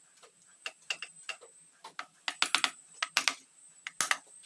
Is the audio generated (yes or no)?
no